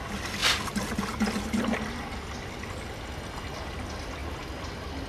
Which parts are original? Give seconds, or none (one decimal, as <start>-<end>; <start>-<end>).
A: 0.0-5.1